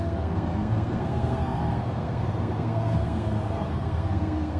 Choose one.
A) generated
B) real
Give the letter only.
A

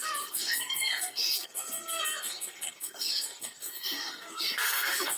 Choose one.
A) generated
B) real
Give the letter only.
A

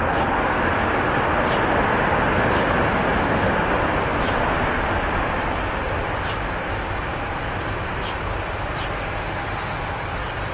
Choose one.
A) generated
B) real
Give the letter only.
B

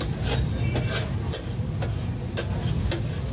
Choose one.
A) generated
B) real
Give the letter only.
B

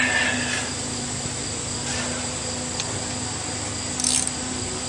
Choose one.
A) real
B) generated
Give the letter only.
A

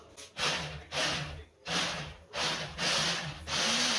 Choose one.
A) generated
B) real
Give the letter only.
B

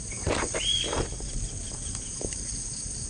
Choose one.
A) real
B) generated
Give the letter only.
A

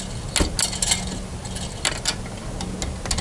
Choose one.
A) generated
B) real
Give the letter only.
B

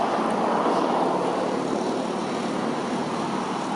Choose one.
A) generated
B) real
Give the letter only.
B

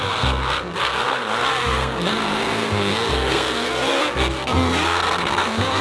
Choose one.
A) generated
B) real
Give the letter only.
A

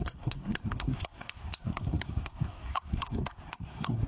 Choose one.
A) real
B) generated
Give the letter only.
B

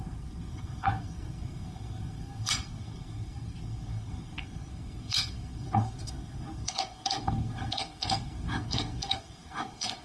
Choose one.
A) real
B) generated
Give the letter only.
B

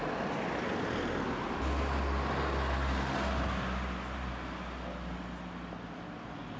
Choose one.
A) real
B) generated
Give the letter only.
A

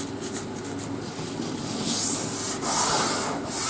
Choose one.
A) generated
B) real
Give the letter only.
B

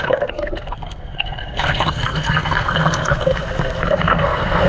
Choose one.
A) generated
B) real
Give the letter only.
A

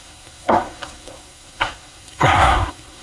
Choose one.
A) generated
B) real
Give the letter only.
A